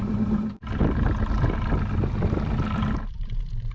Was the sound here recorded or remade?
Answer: recorded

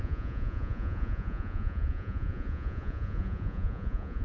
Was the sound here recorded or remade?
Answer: remade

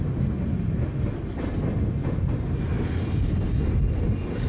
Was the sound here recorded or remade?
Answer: recorded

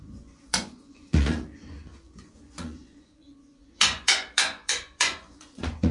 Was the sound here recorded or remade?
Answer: remade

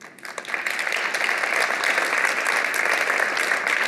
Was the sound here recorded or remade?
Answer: recorded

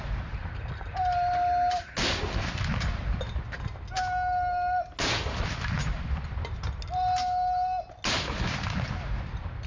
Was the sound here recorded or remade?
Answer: recorded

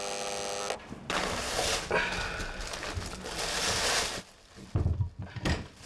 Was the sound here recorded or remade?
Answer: recorded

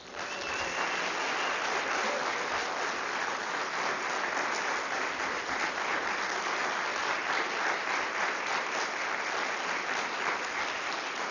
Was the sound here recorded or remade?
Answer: recorded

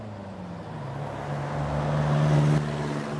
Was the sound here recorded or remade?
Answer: recorded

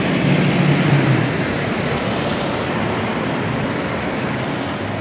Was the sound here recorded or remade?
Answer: recorded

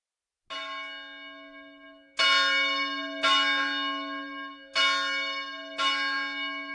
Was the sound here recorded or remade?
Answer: recorded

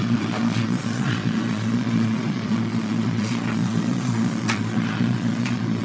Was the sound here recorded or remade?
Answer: remade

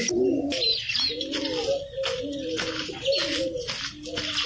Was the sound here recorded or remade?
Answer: recorded